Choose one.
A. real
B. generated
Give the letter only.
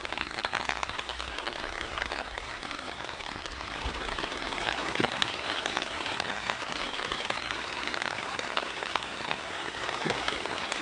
B